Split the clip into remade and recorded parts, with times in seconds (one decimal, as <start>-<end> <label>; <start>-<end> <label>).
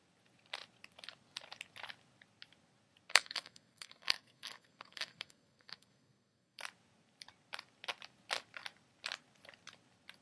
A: 0.0-3.1 recorded; 3.1-6.6 remade; 6.6-10.2 recorded